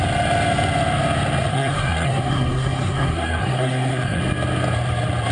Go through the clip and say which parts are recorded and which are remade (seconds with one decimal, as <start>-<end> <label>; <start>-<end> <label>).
0.0-1.5 recorded; 1.5-4.2 remade; 4.2-5.3 recorded